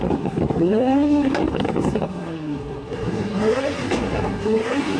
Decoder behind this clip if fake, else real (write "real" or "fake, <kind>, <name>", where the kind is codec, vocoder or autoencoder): fake, codec, SNAC